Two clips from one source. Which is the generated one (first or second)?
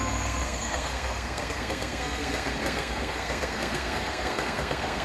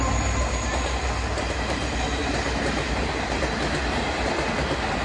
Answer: first